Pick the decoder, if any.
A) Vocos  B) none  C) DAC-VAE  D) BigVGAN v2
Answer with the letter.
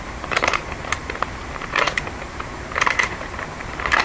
D